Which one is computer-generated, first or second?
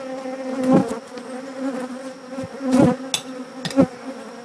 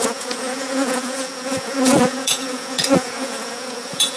second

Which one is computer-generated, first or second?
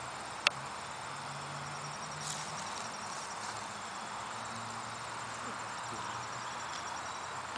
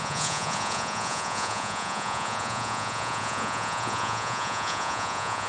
second